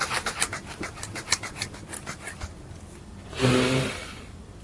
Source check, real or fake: real